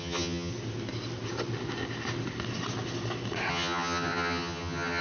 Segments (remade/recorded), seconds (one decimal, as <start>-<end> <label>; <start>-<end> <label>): 0.0-0.5 remade; 0.5-3.5 recorded; 3.5-5.0 remade

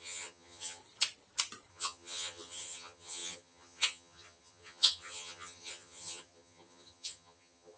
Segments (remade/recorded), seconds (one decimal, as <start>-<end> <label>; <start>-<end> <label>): 0.0-0.8 remade; 0.8-1.7 recorded; 1.7-7.8 remade

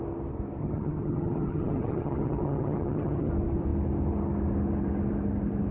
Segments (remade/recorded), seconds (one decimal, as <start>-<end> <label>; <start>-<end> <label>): 0.0-0.6 recorded; 0.6-3.3 remade; 3.3-5.7 recorded